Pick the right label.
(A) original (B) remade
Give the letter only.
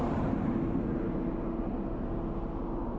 A